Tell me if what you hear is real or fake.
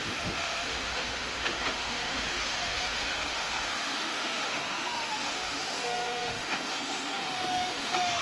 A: fake